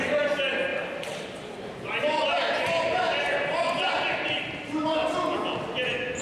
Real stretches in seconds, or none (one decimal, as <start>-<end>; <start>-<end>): 0.0-0.7; 4.4-6.2